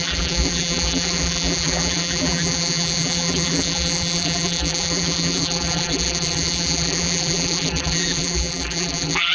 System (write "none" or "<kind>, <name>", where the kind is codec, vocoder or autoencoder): vocoder, BigVGAN v2